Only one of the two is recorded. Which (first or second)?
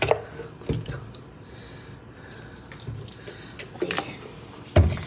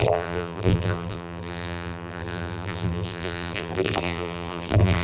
first